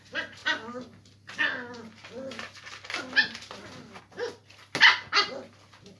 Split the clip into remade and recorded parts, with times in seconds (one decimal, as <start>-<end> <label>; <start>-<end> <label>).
0.0-6.0 recorded